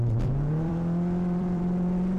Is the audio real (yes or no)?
no